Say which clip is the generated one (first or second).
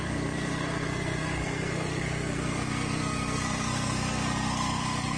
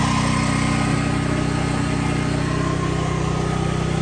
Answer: first